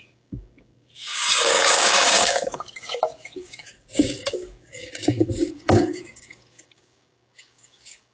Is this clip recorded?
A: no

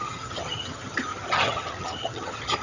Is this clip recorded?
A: no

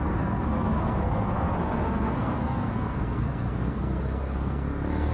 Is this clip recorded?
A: no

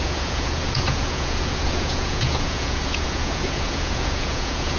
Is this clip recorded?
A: no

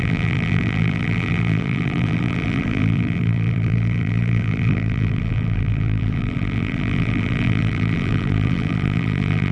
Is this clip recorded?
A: no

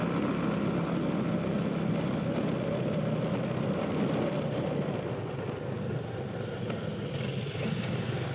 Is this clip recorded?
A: yes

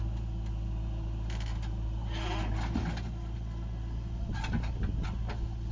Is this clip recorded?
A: yes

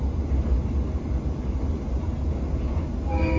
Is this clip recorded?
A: yes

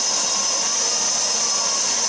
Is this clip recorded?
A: yes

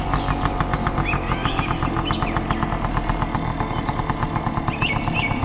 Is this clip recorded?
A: yes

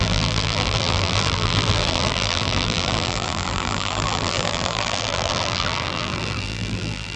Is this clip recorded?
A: no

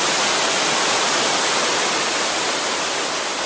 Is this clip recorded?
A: yes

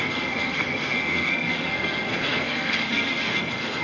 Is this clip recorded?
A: no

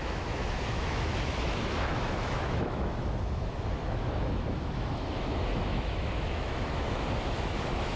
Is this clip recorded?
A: no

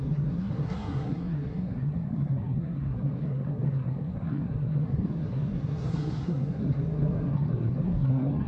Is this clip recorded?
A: no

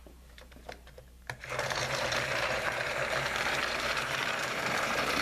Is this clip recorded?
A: no